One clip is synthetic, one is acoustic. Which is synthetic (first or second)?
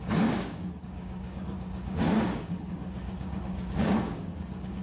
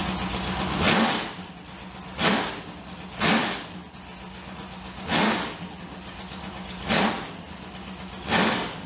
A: first